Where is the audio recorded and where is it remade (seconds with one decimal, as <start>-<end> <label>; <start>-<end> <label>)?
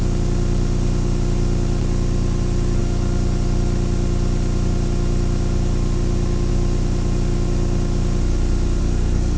0.0-8.8 recorded; 8.8-9.4 remade